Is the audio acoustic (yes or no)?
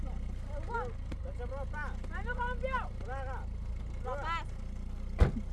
yes